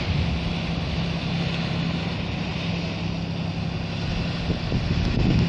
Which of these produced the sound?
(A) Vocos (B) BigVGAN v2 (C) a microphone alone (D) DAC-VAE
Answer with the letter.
C